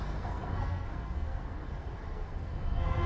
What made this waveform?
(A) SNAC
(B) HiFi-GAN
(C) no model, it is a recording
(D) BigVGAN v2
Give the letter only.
A